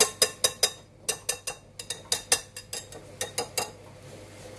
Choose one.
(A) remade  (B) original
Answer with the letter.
B